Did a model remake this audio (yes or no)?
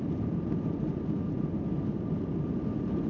no